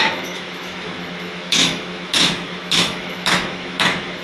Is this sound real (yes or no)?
no